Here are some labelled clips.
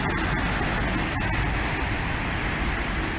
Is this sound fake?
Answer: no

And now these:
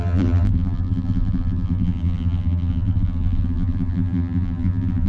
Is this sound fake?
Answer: yes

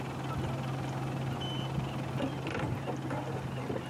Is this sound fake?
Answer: no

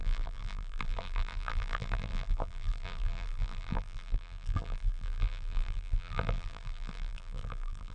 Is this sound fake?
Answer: yes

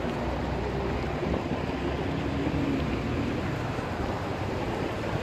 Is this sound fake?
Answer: no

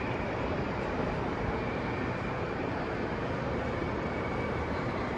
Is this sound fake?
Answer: yes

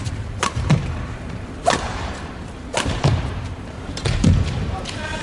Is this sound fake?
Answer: yes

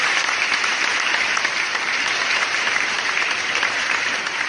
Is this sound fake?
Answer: no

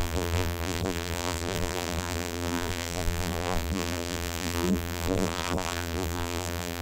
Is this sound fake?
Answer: yes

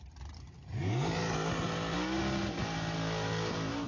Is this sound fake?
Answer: no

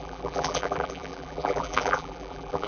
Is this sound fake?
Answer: yes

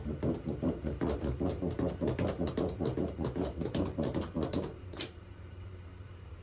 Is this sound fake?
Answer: yes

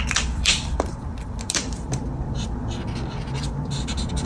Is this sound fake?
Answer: yes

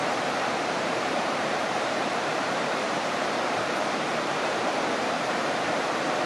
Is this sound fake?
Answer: yes